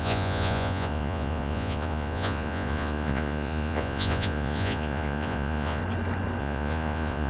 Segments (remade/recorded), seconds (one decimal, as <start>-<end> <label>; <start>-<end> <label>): 0.0-5.8 remade; 5.8-6.4 recorded; 6.4-7.3 remade

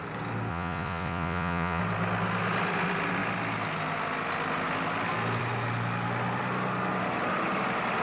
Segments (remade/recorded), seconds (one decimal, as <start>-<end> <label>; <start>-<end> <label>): 0.0-0.5 recorded; 0.5-1.8 remade; 1.8-8.0 recorded

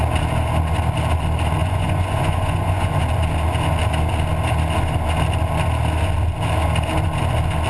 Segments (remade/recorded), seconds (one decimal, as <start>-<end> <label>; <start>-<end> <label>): 0.0-1.6 recorded; 1.6-3.0 remade; 3.0-7.7 recorded

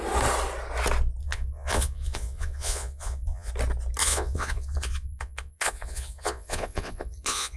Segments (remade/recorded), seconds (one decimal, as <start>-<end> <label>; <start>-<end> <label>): 0.0-1.2 recorded; 1.2-3.5 remade; 3.5-4.0 recorded; 4.0-7.6 remade

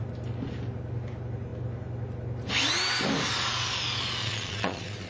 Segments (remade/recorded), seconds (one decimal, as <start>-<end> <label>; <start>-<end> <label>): 0.0-4.2 recorded; 4.2-5.1 remade

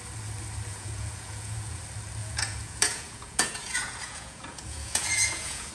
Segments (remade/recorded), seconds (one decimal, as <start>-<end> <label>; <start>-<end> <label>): 0.0-0.7 recorded; 0.7-1.8 remade; 1.8-2.2 recorded; 2.2-5.7 remade

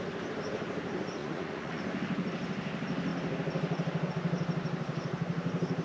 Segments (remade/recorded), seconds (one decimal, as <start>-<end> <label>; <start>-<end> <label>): 0.0-1.2 recorded; 1.2-1.8 remade; 1.8-5.8 recorded